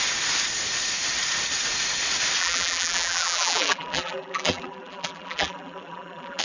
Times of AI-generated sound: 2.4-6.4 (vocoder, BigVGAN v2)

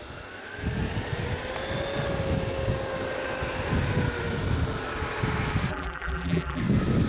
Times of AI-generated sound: 5.7-6.6 (vocoder, BigVGAN v2)

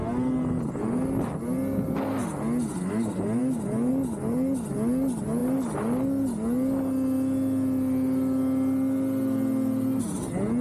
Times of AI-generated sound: none

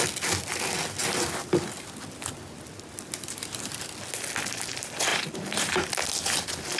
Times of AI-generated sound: 5.1-5.9 (vocoder, BigVGAN v2)

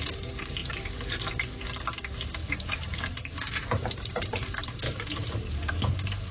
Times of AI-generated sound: 0.6-1.5 (vocoder, BigVGAN v2); 2.4-5.7